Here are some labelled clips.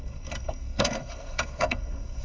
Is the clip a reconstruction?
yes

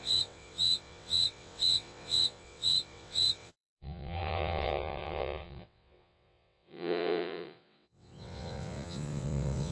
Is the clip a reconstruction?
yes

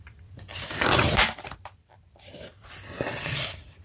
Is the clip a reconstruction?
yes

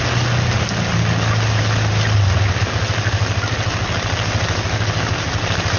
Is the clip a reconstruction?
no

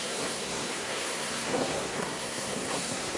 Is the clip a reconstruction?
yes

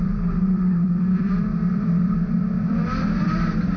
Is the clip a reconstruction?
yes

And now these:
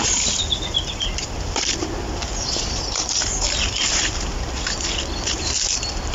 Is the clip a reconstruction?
yes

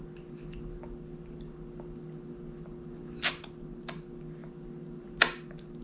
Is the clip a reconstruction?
no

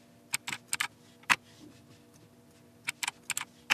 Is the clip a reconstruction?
no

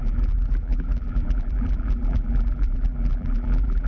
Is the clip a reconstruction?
yes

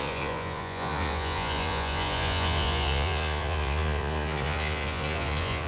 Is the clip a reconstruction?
yes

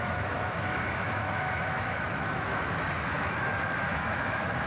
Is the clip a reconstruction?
yes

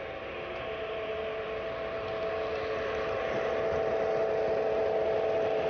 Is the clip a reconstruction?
no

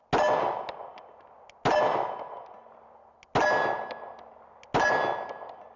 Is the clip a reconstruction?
no